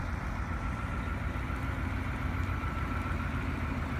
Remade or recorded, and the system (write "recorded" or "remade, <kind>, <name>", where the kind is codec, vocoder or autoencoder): recorded